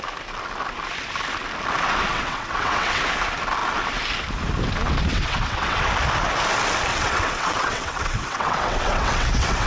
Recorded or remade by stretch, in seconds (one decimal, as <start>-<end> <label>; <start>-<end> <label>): 0.0-2.0 recorded; 2.0-3.0 remade; 3.0-5.1 recorded; 5.1-5.9 remade; 5.9-6.9 recorded; 6.9-9.7 remade